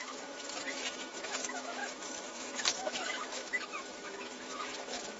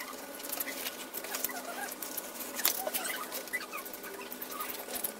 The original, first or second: second